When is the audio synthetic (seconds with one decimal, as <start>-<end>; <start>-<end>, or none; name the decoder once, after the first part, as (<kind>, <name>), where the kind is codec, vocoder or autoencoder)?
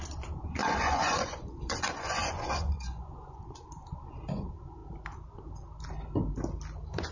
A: 0.6-3.4 (vocoder, Vocos)